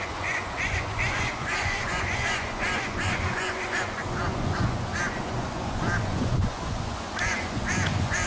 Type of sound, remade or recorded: remade